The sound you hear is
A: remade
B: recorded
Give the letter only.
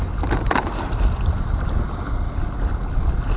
B